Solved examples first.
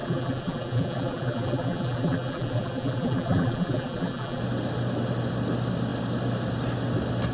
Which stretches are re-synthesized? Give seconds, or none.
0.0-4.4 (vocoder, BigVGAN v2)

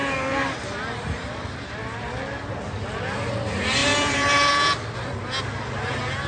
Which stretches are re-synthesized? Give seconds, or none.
3.8-4.5 (vocoder, BigVGAN v2)

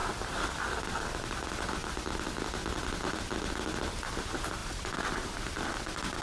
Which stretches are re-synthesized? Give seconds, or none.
4.6-5.3 (vocoder, BigVGAN v2)

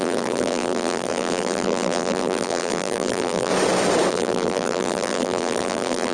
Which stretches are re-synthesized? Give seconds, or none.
0.0-3.5 (vocoder, BigVGAN v2); 4.1-6.1

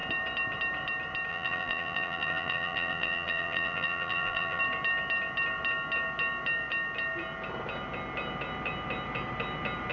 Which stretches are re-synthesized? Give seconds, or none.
1.3-4.6 (vocoder, BigVGAN v2)

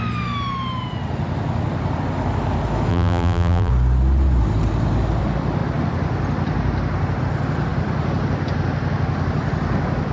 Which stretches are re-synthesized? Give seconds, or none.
2.9-3.7 (vocoder, BigVGAN v2)

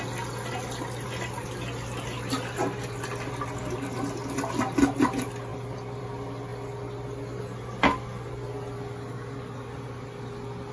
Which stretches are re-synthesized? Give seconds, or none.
none

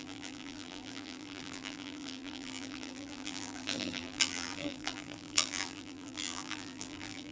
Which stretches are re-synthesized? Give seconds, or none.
0.0-7.3 (vocoder, BigVGAN v2)